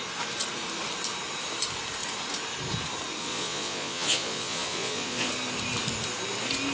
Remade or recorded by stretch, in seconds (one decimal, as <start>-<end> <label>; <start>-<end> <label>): 0.0-3.2 recorded; 3.2-5.3 remade; 5.3-6.7 recorded